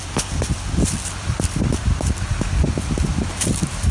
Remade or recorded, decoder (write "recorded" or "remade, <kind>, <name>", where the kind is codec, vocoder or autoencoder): remade, vocoder, BigVGAN v2